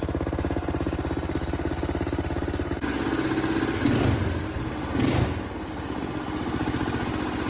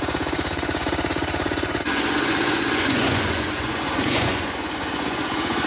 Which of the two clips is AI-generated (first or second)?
second